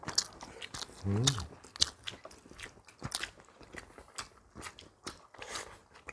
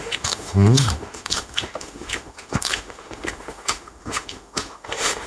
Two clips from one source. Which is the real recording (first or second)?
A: first